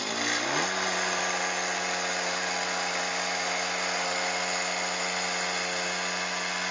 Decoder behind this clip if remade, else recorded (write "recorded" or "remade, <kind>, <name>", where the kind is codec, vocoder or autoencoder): recorded